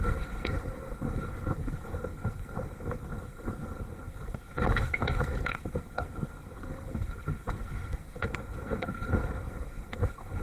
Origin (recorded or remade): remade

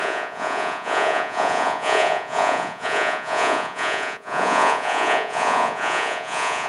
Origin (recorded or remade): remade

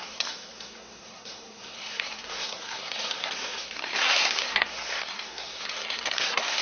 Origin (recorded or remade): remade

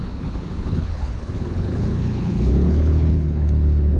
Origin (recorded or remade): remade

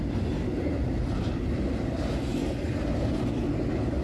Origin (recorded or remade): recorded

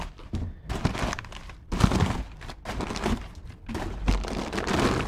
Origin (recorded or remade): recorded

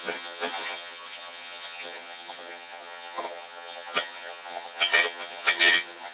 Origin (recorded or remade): remade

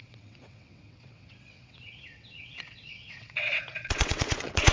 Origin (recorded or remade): remade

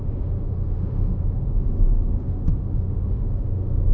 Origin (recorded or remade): remade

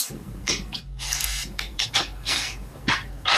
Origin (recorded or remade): remade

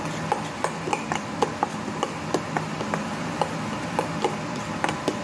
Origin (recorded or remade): recorded